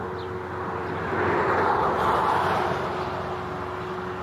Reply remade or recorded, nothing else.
recorded